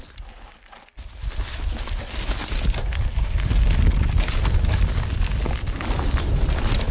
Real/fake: real